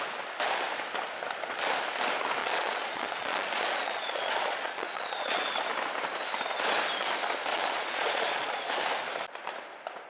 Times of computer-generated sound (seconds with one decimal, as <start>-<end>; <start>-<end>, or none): 2.4-5.5; 7.5-8.7